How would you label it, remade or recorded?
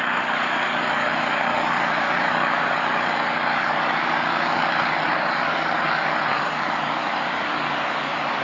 remade